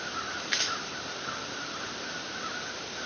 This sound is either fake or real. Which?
real